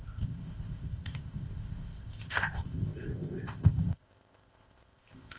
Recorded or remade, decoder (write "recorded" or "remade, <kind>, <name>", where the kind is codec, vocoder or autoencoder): remade, codec, ZipCodec